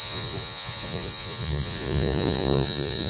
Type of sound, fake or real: fake